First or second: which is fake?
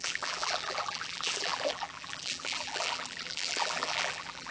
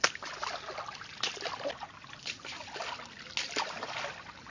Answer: first